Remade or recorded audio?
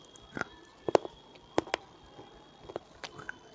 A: recorded